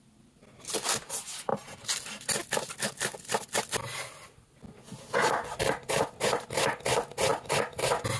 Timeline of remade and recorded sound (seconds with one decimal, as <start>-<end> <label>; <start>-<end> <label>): 0.0-8.2 recorded